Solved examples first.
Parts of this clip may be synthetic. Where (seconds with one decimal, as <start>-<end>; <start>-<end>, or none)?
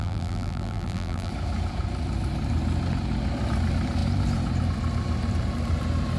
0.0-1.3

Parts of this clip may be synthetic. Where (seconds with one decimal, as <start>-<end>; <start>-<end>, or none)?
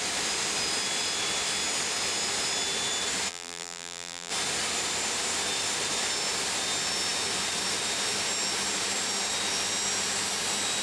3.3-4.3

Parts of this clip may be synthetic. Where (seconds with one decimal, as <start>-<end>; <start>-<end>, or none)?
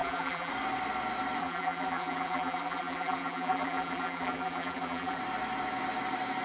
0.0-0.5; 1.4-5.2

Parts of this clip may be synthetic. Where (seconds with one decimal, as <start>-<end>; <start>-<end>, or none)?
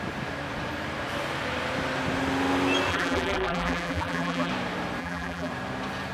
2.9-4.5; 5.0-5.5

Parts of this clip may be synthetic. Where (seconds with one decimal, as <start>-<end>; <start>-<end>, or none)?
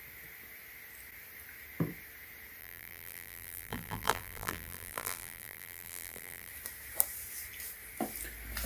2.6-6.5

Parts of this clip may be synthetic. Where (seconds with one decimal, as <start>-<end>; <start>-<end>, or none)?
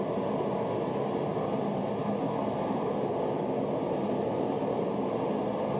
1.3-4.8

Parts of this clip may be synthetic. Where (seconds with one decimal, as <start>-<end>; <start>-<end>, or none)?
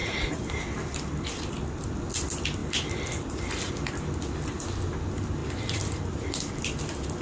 0.0-0.6; 2.6-3.7; 5.4-6.5